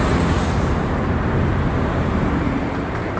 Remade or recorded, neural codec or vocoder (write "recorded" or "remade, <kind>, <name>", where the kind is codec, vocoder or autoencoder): remade, vocoder, BigVGAN v2